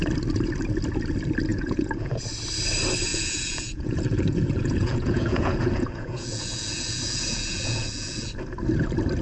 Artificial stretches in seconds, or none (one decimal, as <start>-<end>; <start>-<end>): 1.5-2.2; 3.1-8.3